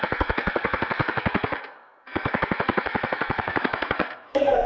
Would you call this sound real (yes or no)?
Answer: no